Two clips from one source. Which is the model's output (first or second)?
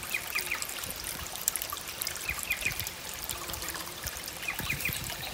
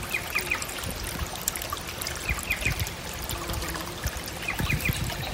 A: first